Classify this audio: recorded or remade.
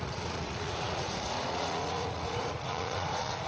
remade